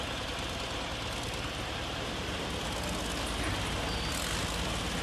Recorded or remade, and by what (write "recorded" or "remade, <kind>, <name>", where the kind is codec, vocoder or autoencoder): recorded